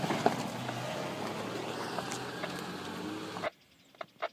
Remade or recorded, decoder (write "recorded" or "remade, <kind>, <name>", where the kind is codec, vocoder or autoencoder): recorded